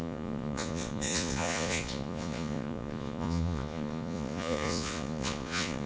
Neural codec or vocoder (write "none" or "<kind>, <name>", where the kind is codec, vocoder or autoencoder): vocoder, Vocos